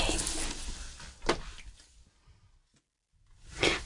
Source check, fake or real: real